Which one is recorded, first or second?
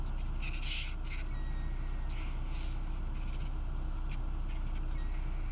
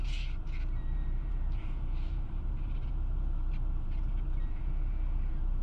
first